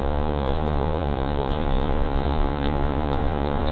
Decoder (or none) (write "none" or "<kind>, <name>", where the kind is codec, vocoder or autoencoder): vocoder, Vocos